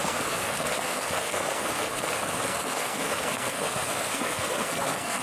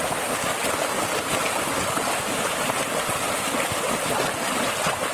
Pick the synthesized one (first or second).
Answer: first